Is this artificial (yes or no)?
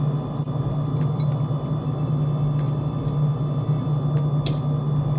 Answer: no